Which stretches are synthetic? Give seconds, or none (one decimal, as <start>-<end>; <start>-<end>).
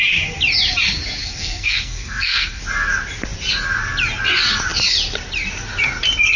1.2-2.6